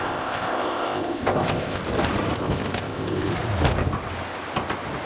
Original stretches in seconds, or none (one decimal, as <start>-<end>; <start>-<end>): 1.8-2.4; 3.3-5.1